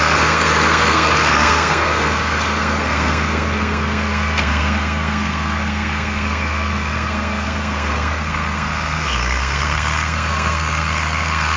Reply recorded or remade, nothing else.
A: remade